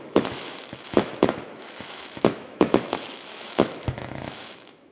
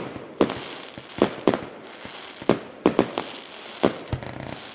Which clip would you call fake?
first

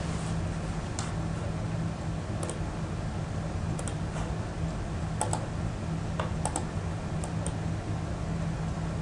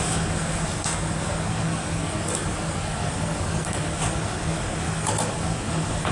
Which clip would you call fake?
second